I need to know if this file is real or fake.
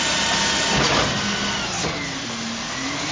real